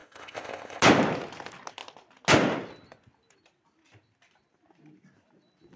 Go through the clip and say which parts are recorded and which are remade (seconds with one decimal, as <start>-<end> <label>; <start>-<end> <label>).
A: 0.0-0.8 remade; 0.8-5.8 recorded